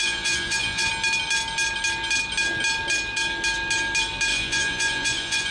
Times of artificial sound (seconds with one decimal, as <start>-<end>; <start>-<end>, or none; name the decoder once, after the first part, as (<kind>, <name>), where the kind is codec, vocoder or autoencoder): 0.0-0.9 (vocoder, Vocos); 4.3-5.5